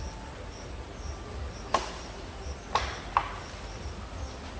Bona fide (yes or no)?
yes